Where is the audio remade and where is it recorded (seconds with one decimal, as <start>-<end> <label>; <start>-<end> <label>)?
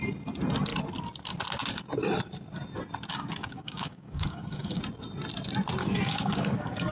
0.0-3.1 recorded; 3.1-4.8 remade; 4.8-5.8 recorded; 5.8-6.9 remade